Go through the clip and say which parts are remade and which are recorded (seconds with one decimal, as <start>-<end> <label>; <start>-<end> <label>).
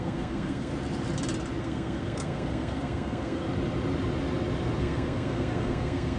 0.0-0.7 remade; 0.7-1.6 recorded; 1.6-3.4 remade; 3.4-4.8 recorded; 4.8-6.2 remade